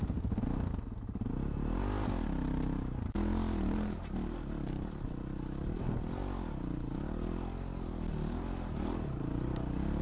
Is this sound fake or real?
real